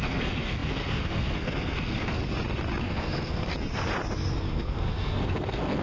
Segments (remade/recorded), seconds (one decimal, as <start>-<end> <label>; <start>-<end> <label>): 0.0-2.2 remade; 2.2-2.8 recorded; 2.8-3.5 remade; 3.5-4.4 recorded; 4.4-5.8 remade